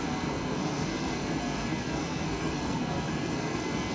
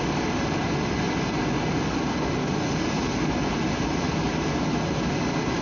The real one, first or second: second